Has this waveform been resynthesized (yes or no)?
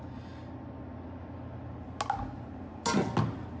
no